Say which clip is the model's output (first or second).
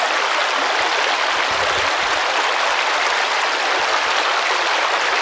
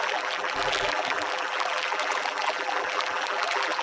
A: second